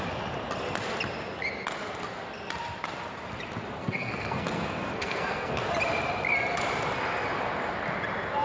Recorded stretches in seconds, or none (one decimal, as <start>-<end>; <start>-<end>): 0.0-3.8; 5.6-8.4